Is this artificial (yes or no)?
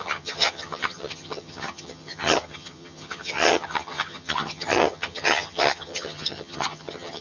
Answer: yes